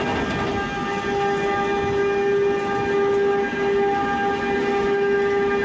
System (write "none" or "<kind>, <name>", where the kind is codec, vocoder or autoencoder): none